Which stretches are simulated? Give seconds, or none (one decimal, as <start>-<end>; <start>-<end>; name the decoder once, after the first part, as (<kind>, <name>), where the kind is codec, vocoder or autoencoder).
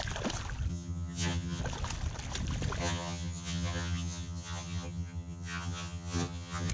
0.7-1.6 (vocoder, HiFi-GAN); 2.8-6.7